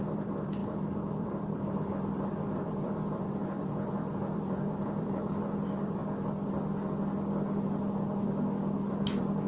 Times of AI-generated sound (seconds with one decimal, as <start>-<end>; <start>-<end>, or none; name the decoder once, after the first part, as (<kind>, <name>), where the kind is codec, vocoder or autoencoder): 0.0-6.0 (vocoder, BigVGAN v2); 8.9-9.5